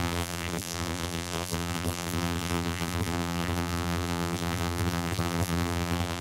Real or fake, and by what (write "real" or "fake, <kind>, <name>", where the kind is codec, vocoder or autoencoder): fake, vocoder, BigVGAN v2